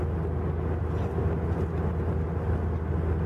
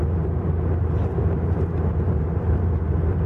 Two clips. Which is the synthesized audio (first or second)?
second